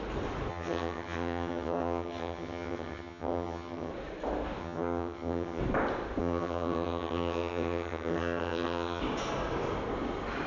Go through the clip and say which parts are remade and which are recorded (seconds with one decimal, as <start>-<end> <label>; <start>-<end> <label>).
0.0-0.5 recorded; 0.5-3.9 remade; 3.9-4.6 recorded; 4.6-5.6 remade; 5.6-6.2 recorded; 6.2-9.0 remade; 9.0-10.5 recorded